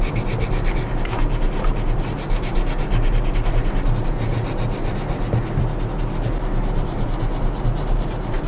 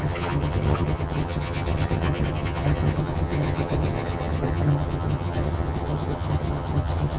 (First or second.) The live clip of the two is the first